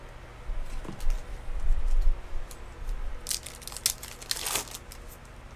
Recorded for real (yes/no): yes